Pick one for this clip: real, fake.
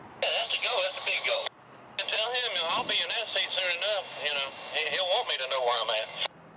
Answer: real